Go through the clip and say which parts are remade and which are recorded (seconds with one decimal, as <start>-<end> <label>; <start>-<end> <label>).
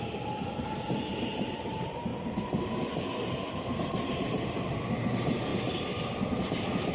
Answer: 0.0-2.1 remade; 2.1-3.3 recorded; 3.3-6.9 remade